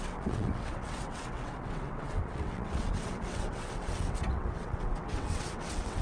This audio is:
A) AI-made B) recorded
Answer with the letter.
A